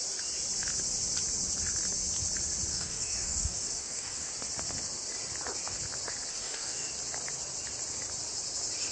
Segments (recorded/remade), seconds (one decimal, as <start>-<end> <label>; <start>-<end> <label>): 0.0-2.7 recorded; 2.7-4.3 remade; 4.3-6.3 recorded; 6.3-6.9 remade; 6.9-8.9 recorded

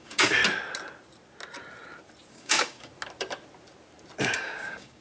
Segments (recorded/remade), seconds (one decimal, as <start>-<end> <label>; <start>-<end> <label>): 0.0-0.4 remade; 0.4-2.3 recorded; 2.3-2.9 remade; 2.9-4.2 recorded; 4.2-5.0 remade

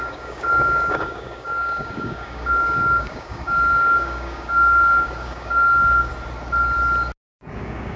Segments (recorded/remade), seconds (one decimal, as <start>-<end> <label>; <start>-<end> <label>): 0.0-6.1 remade; 6.1-7.6 recorded; 7.6-8.0 remade

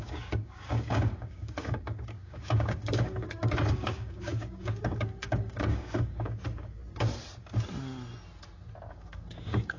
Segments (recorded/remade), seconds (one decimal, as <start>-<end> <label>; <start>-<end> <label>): 0.0-6.8 remade; 6.8-8.9 recorded; 8.9-9.8 remade

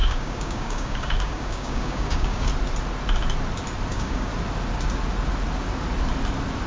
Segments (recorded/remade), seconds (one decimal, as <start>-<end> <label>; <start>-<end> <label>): 0.0-2.5 remade; 2.5-3.9 recorded; 3.9-4.3 remade; 4.3-6.7 recorded

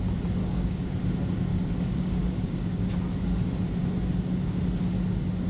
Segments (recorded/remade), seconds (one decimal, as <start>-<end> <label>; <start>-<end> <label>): 0.0-0.4 recorded; 0.4-1.0 remade; 1.0-1.5 recorded; 1.5-2.9 remade; 2.9-3.8 recorded; 3.8-4.6 remade; 4.6-5.5 recorded